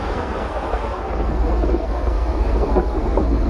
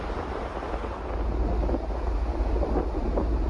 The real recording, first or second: second